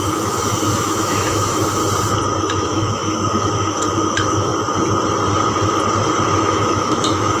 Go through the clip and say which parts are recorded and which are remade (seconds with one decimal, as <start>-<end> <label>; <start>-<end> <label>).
0.0-1.8 remade; 1.8-2.4 recorded; 2.4-4.5 remade; 4.5-6.4 recorded; 6.4-7.4 remade